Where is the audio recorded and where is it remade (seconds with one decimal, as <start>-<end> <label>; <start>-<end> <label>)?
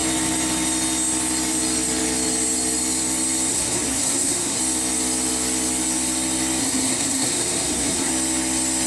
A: 0.0-3.5 recorded; 3.5-4.6 remade; 4.6-6.6 recorded; 6.6-8.1 remade; 8.1-8.9 recorded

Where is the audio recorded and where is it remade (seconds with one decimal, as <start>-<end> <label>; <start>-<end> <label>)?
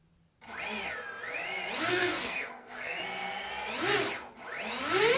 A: 0.0-1.9 recorded; 1.9-3.5 remade; 3.5-5.2 recorded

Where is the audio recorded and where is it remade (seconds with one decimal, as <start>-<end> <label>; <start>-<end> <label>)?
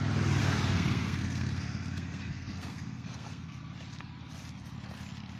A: 0.0-0.4 recorded; 0.4-3.6 remade; 3.6-5.4 recorded